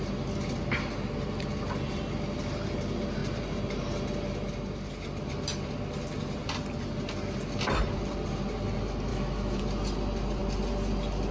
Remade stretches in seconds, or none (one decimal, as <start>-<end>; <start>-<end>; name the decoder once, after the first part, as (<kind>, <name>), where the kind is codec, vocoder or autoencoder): 9.1-9.6 (autoencoder, DAC-VAE)